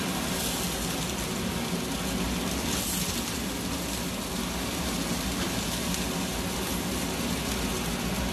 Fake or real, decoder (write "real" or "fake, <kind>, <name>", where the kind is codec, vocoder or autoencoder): real